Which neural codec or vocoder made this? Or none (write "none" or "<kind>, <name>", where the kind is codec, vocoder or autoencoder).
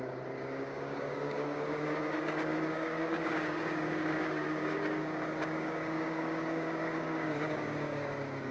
codec, DAC